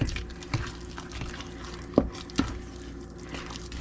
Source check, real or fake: real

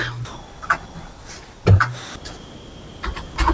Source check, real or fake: real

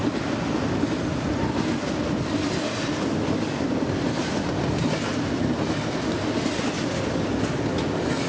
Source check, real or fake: real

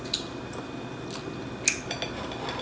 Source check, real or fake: real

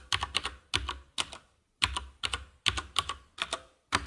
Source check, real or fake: real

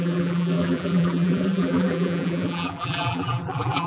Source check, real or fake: fake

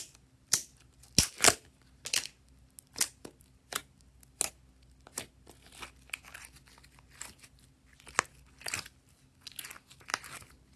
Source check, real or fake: real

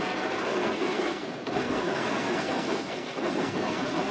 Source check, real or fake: fake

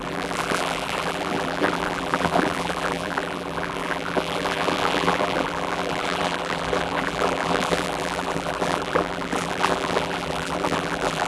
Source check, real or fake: fake